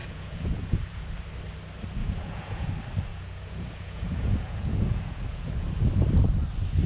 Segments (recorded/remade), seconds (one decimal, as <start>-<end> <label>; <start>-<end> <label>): 0.0-1.0 remade; 1.0-2.0 recorded; 2.0-2.7 remade; 2.7-3.1 recorded; 3.1-5.7 remade; 5.7-6.9 recorded